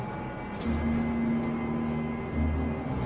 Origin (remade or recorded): recorded